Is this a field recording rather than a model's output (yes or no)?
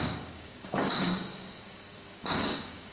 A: no